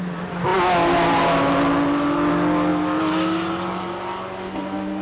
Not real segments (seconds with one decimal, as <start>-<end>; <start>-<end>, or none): none